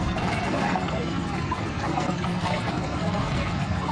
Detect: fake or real fake